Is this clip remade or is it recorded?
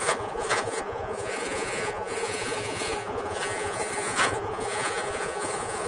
remade